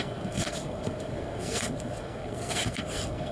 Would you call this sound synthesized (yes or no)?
yes